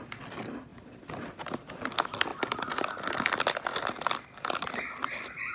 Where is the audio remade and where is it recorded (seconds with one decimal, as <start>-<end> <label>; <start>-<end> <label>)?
0.0-5.5 recorded